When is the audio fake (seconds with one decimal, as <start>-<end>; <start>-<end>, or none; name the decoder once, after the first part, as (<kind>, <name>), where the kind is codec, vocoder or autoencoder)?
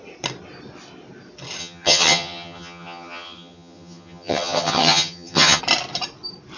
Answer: 1.6-5.6 (vocoder, HiFi-GAN)